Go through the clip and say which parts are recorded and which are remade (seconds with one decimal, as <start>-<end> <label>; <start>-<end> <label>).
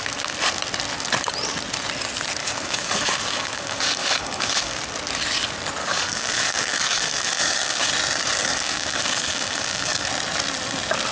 0.0-2.4 recorded; 2.4-4.8 remade; 4.8-5.8 recorded; 5.8-7.9 remade; 7.9-8.4 recorded; 8.4-10.1 remade; 10.1-11.1 recorded